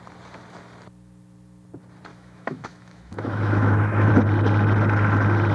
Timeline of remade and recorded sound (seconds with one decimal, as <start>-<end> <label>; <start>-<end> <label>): 0.0-2.1 recorded; 2.1-4.1 remade; 4.1-5.5 recorded